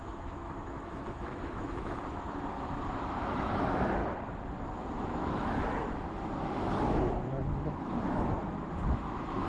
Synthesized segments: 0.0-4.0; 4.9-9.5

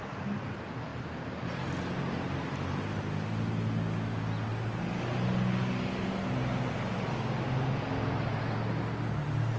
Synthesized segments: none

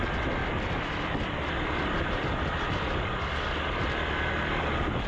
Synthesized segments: 0.4-3.5